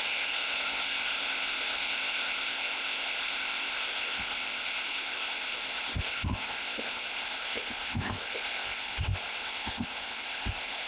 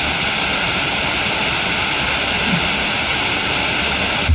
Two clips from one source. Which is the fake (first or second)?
first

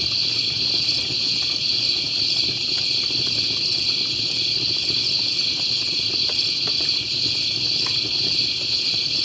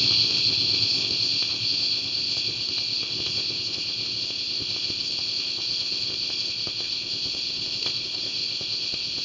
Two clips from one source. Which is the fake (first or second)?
second